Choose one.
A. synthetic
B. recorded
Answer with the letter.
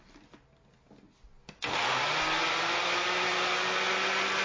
B